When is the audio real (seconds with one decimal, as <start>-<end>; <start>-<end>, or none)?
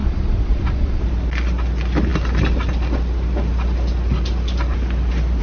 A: 1.0-5.4